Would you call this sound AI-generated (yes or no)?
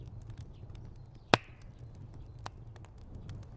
no